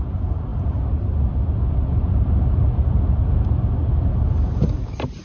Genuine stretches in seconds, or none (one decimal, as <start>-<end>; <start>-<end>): 0.0-5.2